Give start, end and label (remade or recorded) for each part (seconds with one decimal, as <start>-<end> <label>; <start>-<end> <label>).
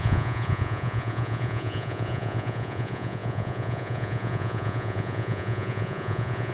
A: 0.0-6.5 remade